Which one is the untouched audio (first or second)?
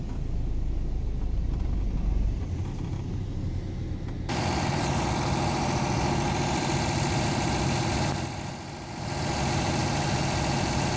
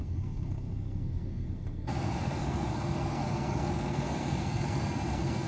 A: first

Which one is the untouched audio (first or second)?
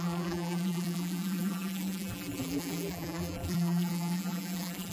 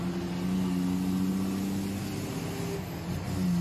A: second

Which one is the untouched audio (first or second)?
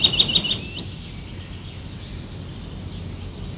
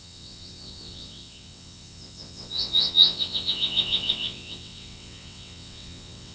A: first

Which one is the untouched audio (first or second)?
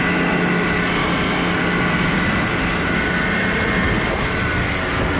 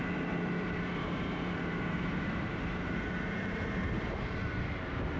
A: first